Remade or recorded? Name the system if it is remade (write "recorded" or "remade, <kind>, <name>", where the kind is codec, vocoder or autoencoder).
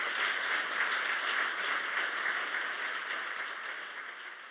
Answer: recorded